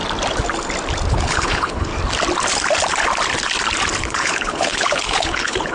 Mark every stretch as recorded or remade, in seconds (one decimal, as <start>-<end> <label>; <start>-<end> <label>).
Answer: 0.0-1.1 recorded; 1.1-1.9 remade; 1.9-4.0 recorded; 4.0-5.7 remade